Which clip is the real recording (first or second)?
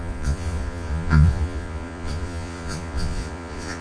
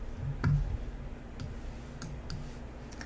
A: second